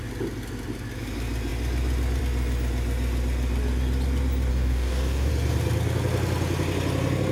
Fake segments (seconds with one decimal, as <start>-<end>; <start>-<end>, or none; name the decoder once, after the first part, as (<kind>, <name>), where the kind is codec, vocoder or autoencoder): 4.5-5.3 (codec, DAC)